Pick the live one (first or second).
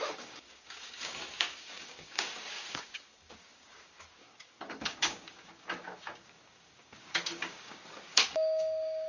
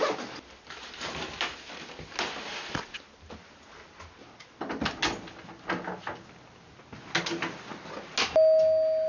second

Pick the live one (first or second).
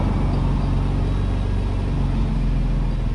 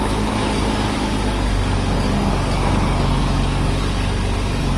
first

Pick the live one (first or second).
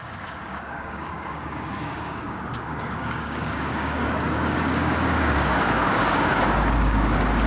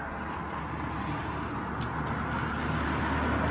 second